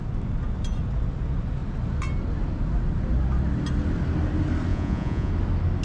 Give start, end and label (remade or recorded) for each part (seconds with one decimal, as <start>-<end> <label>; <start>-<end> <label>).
0.0-4.7 recorded; 4.7-5.3 remade; 5.3-5.8 recorded